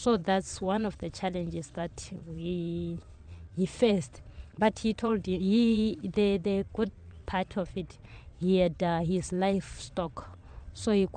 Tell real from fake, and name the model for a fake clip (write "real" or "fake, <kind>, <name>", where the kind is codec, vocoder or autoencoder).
fake, vocoder, Vocos